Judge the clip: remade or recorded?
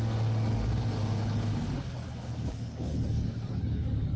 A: remade